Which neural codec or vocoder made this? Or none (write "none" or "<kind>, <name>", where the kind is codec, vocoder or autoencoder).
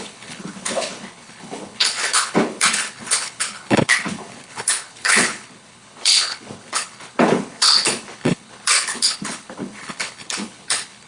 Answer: codec, HILCodec